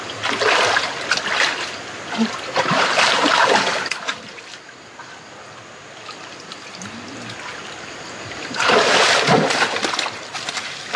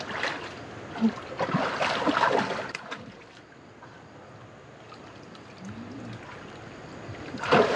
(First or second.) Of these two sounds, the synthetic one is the first